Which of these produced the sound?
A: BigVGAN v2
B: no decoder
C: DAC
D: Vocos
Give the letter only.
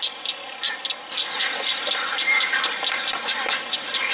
B